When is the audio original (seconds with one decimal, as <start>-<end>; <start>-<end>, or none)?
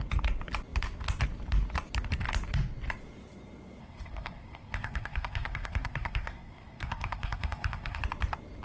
0.0-3.8; 8.0-8.6